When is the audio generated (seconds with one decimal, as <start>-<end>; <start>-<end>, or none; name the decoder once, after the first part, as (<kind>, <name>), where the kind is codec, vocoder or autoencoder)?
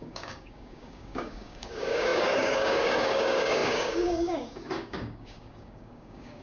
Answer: 0.0-6.4 (codec, DAC)